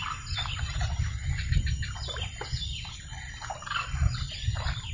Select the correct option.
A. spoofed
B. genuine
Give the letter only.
B